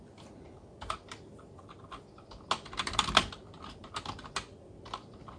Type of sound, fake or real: real